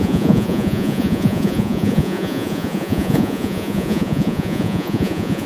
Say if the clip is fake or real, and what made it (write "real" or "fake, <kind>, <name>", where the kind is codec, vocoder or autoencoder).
fake, vocoder, Vocos